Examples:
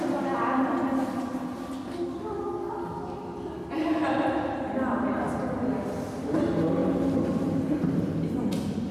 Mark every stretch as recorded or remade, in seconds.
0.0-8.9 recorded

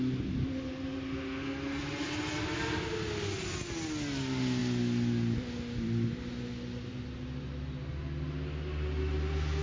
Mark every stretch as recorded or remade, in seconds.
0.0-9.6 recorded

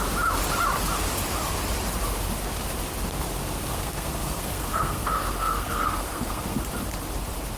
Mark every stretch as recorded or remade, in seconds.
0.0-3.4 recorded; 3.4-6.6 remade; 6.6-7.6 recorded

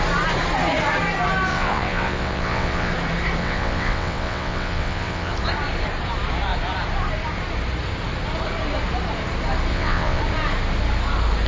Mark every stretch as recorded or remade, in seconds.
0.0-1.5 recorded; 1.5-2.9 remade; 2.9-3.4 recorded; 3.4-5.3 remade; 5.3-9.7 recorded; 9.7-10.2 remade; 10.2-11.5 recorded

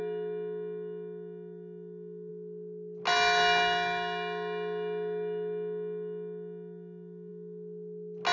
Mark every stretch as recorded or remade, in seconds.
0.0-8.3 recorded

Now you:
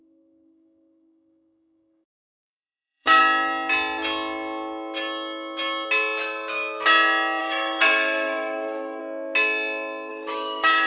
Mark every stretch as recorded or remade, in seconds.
0.0-3.2 remade; 3.2-7.4 recorded; 7.4-9.0 remade; 9.0-10.1 recorded; 10.1-10.9 remade

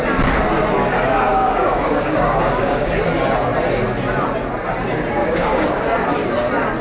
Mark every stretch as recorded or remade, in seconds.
0.0-1.3 recorded; 1.3-2.9 remade; 2.9-5.2 recorded; 5.2-5.7 remade; 5.7-6.8 recorded

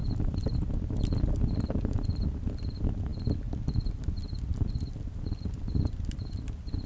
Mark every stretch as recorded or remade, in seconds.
0.0-6.9 recorded